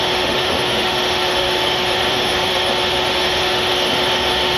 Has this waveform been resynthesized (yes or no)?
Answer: yes